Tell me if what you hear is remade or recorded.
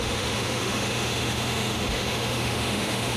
remade